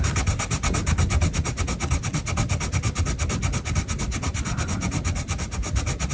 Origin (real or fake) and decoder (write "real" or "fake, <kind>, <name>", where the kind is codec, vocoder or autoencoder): real